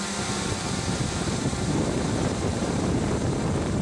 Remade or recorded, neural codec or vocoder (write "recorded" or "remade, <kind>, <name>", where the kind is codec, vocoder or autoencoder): remade, vocoder, BigVGAN v2